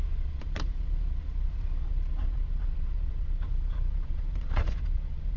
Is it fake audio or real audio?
fake